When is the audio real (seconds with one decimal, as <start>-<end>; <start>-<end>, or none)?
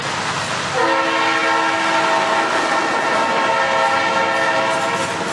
0.0-5.3